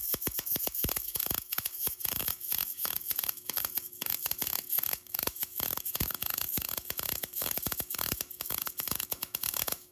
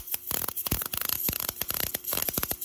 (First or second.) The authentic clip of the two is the second